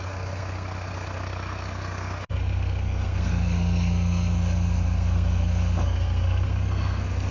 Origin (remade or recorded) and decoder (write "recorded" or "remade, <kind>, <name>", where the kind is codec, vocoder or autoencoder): remade, codec, SNAC